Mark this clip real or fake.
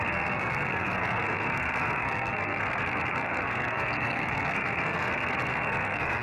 fake